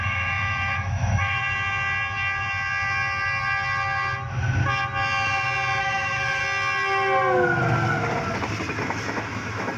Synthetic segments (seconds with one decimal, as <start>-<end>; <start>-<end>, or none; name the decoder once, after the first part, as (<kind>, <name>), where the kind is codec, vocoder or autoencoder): 0.0-1.4 (autoencoder, DAC-VAE); 5.8-6.4; 8.8-9.8

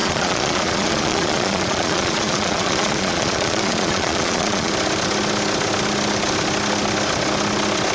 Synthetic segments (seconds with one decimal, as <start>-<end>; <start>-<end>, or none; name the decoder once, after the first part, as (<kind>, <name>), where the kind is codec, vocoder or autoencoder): 0.0-4.7 (vocoder, Vocos)

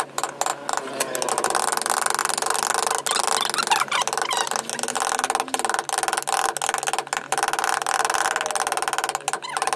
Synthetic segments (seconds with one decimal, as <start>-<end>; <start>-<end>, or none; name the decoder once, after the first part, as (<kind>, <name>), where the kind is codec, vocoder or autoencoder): none

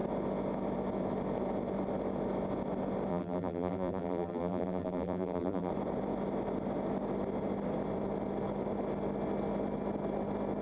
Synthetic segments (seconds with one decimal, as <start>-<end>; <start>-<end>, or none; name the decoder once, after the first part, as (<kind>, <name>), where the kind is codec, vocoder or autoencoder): 3.1-5.7 (vocoder, BigVGAN v2)

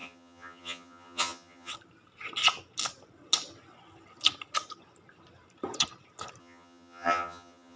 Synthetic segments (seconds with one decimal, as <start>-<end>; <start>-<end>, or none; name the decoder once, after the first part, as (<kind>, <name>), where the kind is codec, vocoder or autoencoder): 0.0-1.7 (vocoder, HiFi-GAN); 6.4-7.8